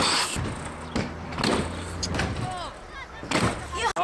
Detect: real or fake real